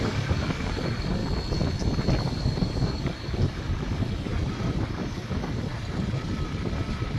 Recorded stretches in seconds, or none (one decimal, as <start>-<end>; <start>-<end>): 1.2-2.2; 4.3-4.9; 5.7-7.2